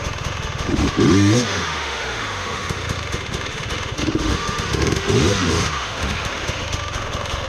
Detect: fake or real fake